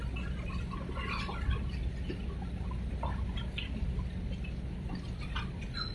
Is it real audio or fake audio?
real